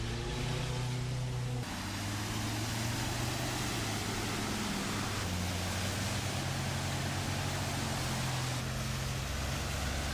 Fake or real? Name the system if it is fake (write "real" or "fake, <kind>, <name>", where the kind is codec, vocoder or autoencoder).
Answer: real